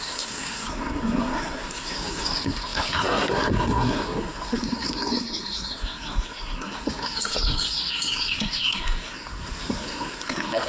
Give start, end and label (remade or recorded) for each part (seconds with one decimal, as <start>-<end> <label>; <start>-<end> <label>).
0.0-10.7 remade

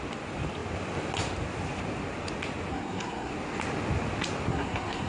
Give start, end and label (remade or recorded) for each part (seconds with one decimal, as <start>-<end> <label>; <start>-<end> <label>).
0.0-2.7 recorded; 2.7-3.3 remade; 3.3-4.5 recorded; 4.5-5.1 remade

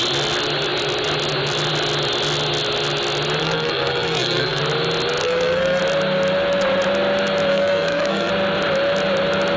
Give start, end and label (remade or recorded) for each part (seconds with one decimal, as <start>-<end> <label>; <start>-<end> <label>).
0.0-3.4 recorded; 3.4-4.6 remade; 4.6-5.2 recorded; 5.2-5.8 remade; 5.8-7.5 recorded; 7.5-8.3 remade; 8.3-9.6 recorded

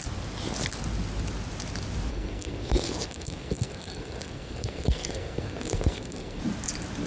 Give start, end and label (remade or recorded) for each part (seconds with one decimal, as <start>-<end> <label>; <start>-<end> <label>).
0.0-2.1 recorded; 2.1-6.4 remade; 6.4-7.1 recorded